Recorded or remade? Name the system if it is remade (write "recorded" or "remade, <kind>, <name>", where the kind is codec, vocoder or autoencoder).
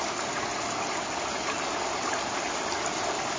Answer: recorded